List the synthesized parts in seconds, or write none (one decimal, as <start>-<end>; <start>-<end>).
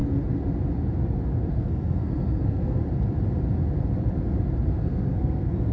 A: 1.5-2.8; 4.8-5.7